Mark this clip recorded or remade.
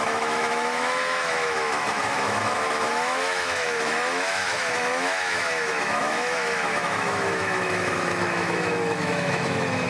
remade